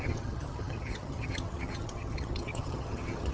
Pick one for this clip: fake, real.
fake